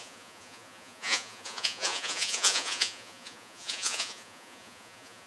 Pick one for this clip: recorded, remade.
remade